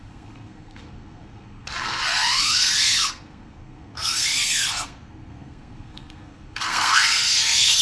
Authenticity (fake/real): fake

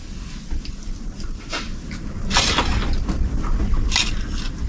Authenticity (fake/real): real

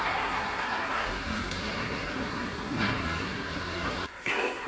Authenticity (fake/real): fake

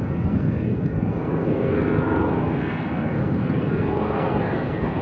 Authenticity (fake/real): fake